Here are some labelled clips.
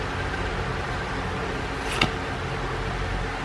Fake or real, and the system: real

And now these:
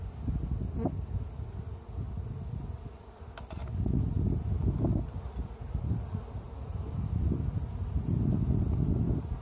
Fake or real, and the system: real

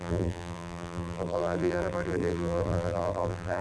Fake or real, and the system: fake, vocoder, BigVGAN v2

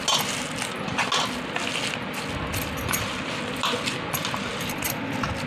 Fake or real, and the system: real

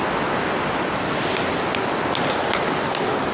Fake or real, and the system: real